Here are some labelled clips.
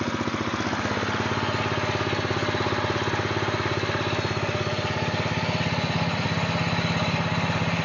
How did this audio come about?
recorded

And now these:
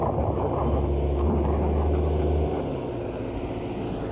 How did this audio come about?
recorded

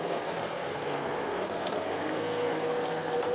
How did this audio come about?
remade